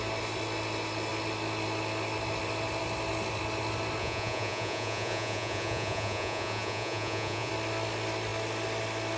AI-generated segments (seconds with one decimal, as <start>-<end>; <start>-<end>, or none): 4.0-7.5